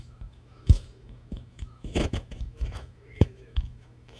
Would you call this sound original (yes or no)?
no